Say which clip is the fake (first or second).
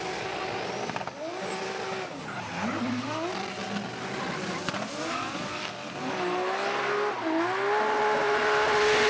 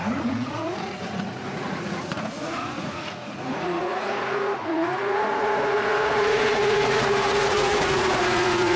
second